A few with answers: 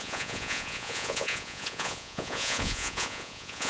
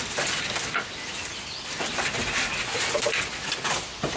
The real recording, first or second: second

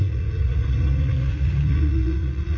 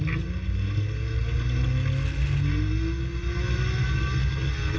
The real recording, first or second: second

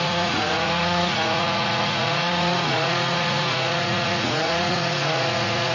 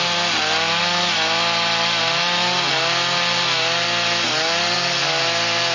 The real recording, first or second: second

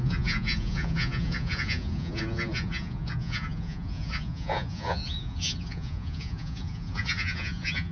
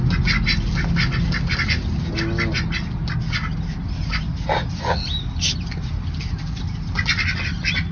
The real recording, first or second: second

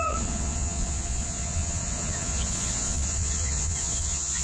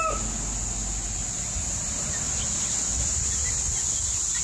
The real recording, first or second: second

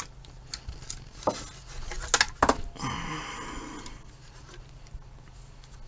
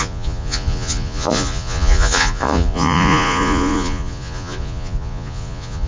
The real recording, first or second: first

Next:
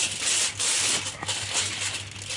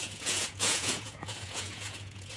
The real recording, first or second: first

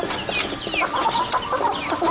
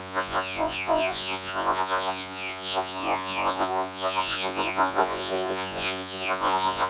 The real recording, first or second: first